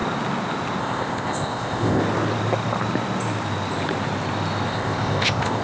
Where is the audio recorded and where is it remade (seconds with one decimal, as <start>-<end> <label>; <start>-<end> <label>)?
0.0-0.8 recorded; 0.8-2.0 remade; 2.0-4.7 recorded; 4.7-5.6 remade